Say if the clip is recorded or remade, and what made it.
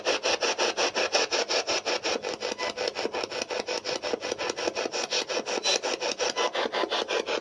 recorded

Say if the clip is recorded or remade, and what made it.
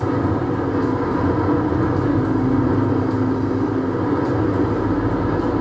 recorded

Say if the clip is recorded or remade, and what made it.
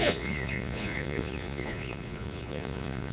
remade, vocoder, Vocos